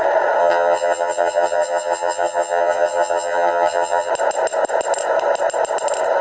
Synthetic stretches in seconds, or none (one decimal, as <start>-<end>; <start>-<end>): 0.4-4.1